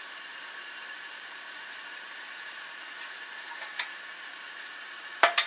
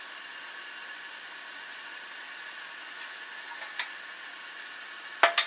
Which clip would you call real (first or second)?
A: second